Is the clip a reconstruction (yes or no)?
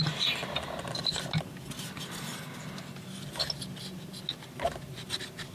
no